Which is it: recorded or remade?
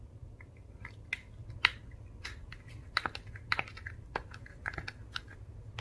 recorded